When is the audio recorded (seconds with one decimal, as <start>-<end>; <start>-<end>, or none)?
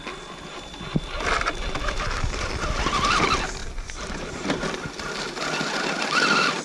0.0-3.6; 4.6-6.6